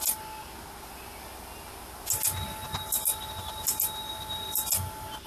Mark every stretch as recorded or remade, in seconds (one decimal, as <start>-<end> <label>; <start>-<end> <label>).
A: 0.0-5.3 recorded